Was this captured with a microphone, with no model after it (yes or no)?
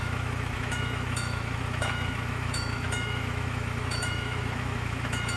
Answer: no